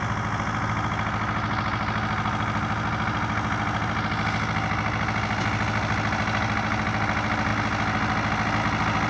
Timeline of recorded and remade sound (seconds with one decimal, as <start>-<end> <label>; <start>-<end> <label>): 0.0-9.1 recorded